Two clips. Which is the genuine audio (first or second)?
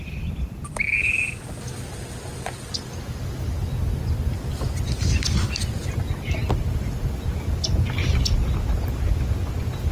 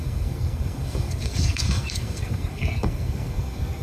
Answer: first